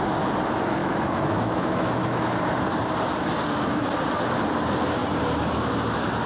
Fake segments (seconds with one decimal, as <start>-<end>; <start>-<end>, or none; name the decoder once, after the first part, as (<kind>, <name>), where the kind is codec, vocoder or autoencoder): 0.8-2.3 (autoencoder, DAC-VAE)